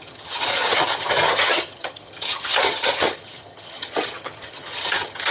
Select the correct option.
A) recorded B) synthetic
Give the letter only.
B